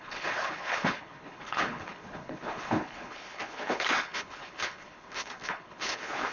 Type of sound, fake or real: fake